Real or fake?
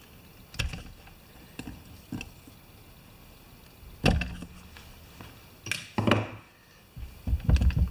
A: real